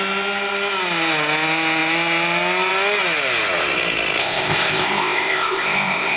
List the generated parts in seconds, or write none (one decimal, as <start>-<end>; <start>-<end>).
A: 4.2-6.2